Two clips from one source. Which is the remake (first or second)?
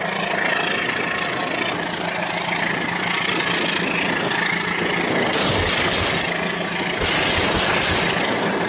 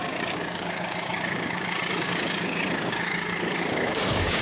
second